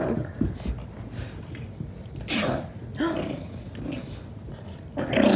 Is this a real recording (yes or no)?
yes